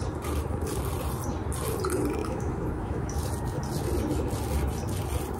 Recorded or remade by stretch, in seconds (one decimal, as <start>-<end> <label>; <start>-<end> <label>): 0.0-2.2 recorded; 2.2-3.3 remade; 3.3-5.4 recorded

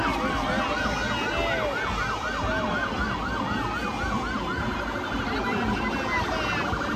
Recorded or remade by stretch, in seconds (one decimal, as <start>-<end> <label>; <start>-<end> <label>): 0.0-7.0 recorded

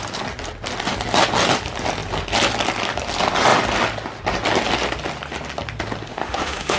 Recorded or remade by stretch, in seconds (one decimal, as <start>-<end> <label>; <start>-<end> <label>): 0.0-6.1 recorded; 6.1-6.8 remade